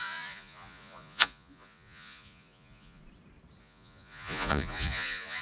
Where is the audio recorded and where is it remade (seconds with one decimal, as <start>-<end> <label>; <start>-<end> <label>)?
0.0-3.0 remade; 3.0-3.6 recorded; 3.6-5.4 remade